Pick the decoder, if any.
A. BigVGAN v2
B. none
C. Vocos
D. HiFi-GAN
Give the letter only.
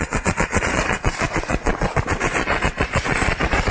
C